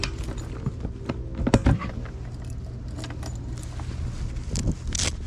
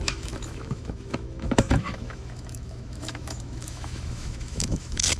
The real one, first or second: first